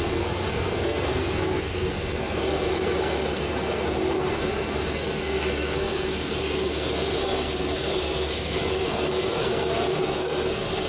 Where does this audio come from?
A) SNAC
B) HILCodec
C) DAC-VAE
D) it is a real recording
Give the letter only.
A